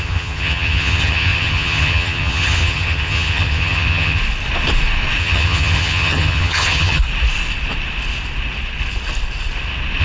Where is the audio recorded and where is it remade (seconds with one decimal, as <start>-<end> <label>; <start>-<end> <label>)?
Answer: 0.0-4.2 remade; 4.2-5.2 recorded; 5.2-7.0 remade; 7.0-10.0 recorded